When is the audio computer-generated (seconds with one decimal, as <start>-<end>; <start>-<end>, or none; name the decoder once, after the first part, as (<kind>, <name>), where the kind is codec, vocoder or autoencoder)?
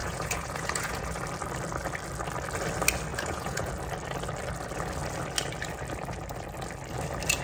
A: 0.0-1.2 (vocoder, Vocos); 3.1-3.7